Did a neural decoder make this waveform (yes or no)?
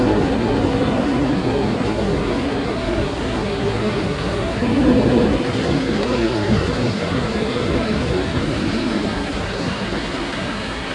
yes